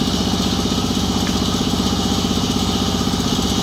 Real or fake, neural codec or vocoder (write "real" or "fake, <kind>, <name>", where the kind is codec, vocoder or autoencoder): real